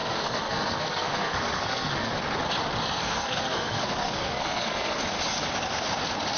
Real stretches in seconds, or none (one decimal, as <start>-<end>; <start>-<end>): 2.1-3.0; 5.0-6.4